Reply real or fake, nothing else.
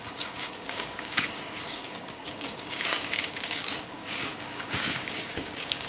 fake